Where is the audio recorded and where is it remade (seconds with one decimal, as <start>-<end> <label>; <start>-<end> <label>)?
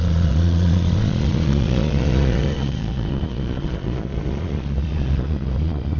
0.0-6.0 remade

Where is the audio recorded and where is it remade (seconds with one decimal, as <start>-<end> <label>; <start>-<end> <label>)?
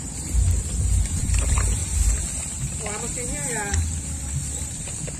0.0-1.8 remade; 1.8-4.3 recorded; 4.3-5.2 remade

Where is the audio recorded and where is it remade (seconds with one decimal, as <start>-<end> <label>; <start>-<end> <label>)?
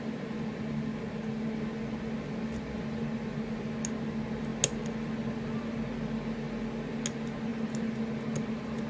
0.0-8.9 recorded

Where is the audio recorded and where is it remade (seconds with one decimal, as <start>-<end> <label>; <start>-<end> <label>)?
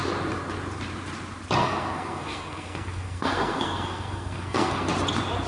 0.0-1.6 recorded; 1.6-4.9 remade; 4.9-5.5 recorded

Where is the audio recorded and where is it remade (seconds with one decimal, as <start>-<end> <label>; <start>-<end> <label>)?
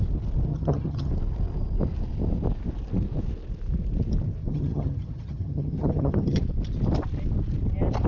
0.0-0.5 recorded; 0.5-1.1 remade; 1.1-4.4 recorded; 4.4-6.4 remade; 6.4-8.1 recorded